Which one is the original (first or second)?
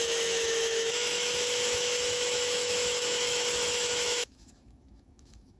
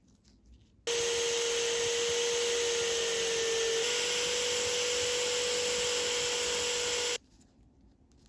second